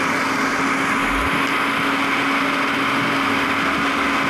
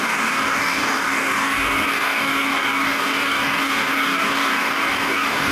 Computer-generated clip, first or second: second